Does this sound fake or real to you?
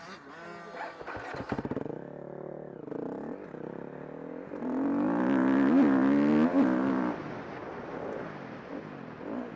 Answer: real